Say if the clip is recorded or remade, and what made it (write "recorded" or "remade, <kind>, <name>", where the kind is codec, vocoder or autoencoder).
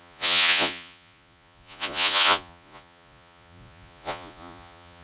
remade, vocoder, Vocos